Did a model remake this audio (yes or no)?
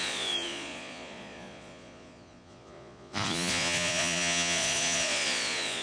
yes